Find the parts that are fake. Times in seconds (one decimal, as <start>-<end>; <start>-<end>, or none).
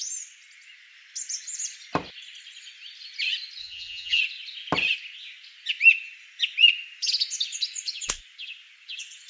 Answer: 3.6-4.2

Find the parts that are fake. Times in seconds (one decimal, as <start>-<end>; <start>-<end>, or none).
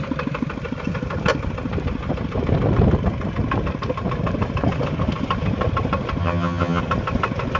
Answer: 6.2-6.8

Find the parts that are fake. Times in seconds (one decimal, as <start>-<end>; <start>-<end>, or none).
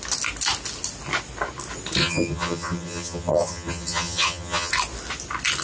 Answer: 2.0-4.7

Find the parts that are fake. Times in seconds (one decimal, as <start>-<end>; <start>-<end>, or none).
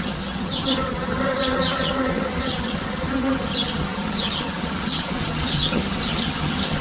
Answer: 0.0-6.8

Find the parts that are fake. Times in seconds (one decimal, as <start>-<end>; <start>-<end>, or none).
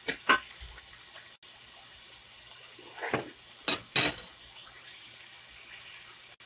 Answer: none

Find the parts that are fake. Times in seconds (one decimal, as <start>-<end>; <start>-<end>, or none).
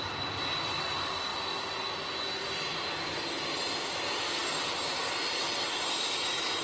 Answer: none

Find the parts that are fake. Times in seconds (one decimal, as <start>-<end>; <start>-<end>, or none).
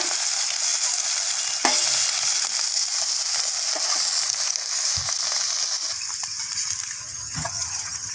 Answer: 7.0-8.1